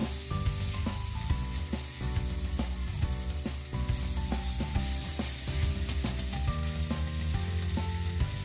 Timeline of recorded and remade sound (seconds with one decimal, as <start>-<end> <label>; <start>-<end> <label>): 0.0-5.0 recorded; 5.0-5.7 remade; 5.7-8.4 recorded

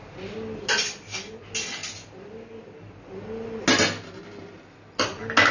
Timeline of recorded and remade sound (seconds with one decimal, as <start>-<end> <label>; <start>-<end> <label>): 0.0-5.5 recorded

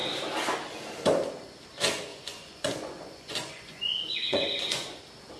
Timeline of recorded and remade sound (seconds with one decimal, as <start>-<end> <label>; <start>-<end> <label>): 0.0-2.1 recorded; 2.1-5.0 remade; 5.0-5.4 recorded

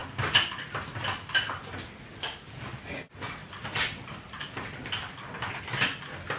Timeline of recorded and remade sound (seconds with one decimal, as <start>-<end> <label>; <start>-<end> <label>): 0.0-6.4 recorded